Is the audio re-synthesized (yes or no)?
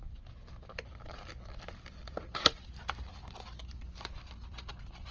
yes